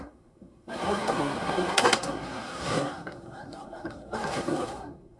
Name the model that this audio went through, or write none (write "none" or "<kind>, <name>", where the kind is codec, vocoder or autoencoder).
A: codec, SNAC